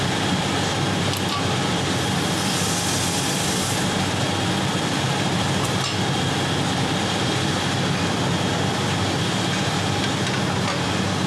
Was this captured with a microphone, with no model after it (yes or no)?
yes